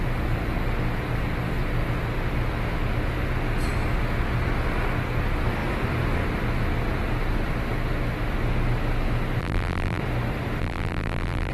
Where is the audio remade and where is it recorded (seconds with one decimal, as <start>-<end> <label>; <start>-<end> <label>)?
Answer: 0.0-9.4 recorded; 9.4-10.0 remade; 10.0-10.6 recorded; 10.6-11.5 remade